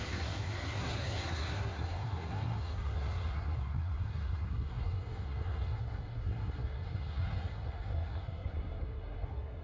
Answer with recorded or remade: remade